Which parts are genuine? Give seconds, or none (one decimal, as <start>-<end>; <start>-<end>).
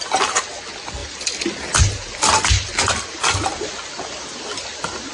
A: 0.0-5.1